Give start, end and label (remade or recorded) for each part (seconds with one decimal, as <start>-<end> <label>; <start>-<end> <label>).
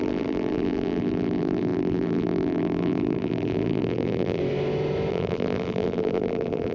0.0-4.4 remade; 4.4-5.1 recorded; 5.1-6.7 remade